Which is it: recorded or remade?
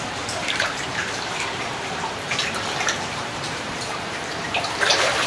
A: remade